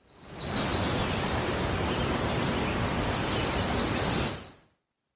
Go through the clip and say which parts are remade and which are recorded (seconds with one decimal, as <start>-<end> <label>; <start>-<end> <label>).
0.0-5.2 recorded